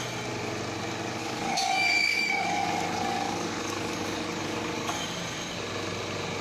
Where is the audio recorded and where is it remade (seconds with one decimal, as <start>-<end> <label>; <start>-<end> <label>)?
0.0-1.2 recorded; 1.2-5.0 remade; 5.0-6.4 recorded